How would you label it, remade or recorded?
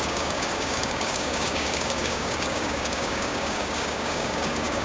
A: remade